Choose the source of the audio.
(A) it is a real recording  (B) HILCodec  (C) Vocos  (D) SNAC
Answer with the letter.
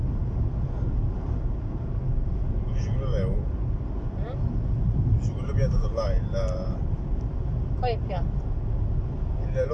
A